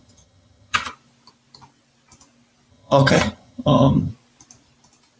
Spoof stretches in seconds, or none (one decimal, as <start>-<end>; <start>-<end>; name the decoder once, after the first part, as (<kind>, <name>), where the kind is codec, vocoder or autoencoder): 0.0-0.9 (vocoder, HiFi-GAN); 2.7-4.1